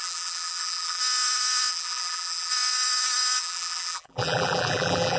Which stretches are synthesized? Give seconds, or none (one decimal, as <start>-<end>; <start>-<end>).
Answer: 0.0-1.0; 1.7-2.5; 3.4-5.2